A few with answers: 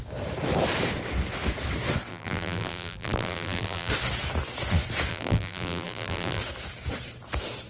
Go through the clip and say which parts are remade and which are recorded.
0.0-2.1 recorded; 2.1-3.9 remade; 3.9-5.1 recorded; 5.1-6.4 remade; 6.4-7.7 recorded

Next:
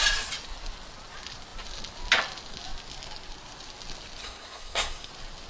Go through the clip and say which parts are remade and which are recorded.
0.0-4.2 recorded; 4.2-5.1 remade; 5.1-5.5 recorded

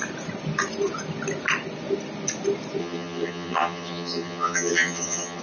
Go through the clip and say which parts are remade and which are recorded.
0.0-2.8 recorded; 2.8-5.4 remade

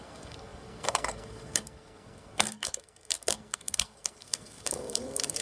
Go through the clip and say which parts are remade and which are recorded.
0.0-5.4 remade